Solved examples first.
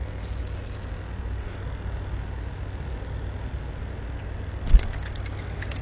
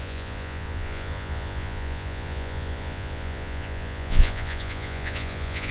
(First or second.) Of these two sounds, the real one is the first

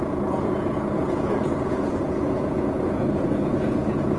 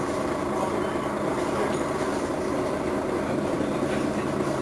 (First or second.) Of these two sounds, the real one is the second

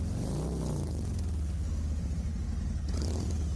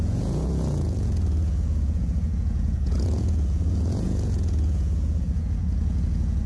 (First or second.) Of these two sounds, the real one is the first